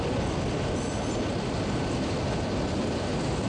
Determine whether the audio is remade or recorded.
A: recorded